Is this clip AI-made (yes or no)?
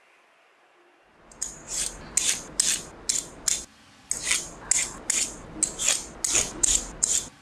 no